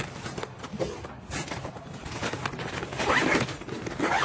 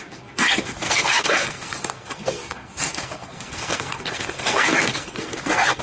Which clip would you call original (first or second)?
first